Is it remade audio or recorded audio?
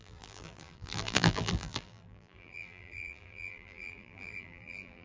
remade